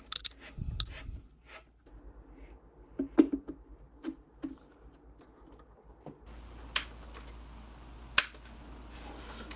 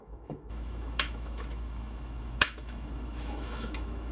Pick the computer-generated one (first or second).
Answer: second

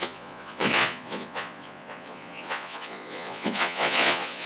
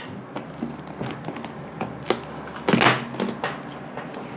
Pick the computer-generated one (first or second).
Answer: first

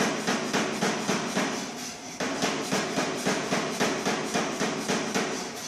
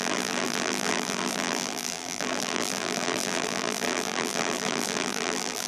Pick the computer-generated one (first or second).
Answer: second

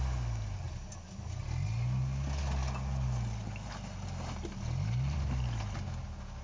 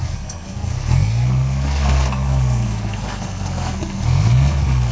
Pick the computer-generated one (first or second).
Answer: second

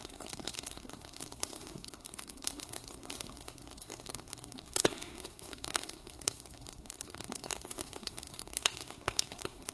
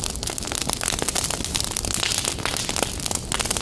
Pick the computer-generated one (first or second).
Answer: first